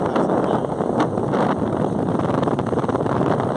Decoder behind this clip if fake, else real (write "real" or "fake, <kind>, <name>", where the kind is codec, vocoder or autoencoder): real